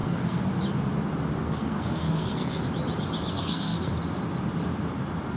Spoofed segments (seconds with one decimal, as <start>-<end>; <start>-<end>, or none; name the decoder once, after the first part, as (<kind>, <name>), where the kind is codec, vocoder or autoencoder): 0.0-0.5 (codec, SNAC); 1.4-2.6; 3.3-3.9